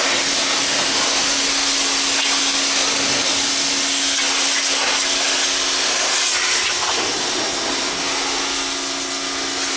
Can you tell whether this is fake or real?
real